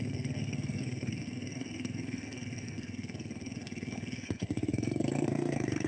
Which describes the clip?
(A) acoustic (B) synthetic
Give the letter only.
B